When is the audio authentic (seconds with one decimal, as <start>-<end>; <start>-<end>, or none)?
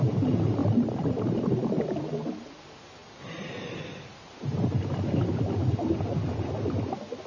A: 0.0-0.6; 2.3-3.0; 4.3-7.3